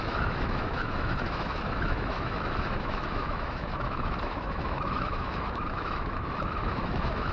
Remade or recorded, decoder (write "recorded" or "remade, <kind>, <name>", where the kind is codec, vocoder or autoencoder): remade, autoencoder, DAC-VAE